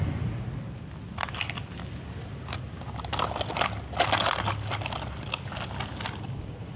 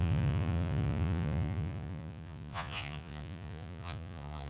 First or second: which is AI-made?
second